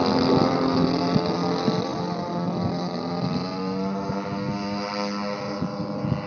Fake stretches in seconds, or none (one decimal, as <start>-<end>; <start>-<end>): none